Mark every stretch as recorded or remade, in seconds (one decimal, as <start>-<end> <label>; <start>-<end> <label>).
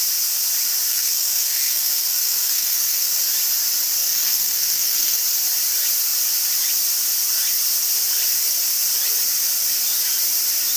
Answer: 0.0-0.9 recorded; 0.9-3.1 remade; 3.1-4.0 recorded; 4.0-5.2 remade; 5.2-10.8 recorded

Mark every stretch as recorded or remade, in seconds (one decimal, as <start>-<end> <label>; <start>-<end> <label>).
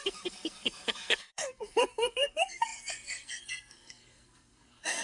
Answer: 0.0-5.0 remade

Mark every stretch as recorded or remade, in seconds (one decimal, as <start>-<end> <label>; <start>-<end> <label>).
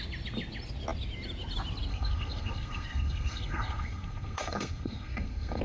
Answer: 0.0-1.9 recorded; 1.9-5.6 remade